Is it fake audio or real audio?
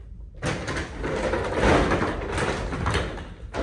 real